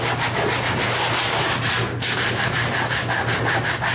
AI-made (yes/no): no